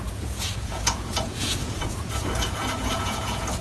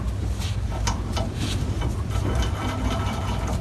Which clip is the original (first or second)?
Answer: second